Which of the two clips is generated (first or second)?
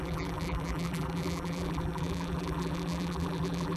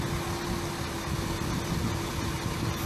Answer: first